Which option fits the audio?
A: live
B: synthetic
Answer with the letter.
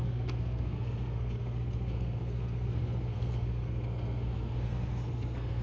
B